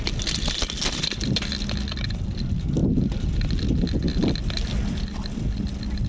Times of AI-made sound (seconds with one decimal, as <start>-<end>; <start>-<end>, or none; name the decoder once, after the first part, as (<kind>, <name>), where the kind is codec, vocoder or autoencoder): none